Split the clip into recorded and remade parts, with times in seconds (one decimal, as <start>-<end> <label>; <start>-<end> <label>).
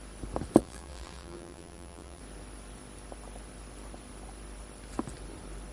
0.0-0.6 recorded; 0.6-2.2 remade; 2.2-5.7 recorded